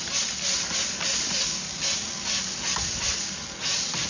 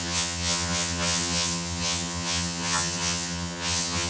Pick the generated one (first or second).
second